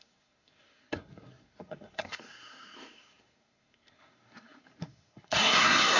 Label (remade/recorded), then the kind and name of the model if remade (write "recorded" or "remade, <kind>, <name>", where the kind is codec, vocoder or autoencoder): remade, codec, SNAC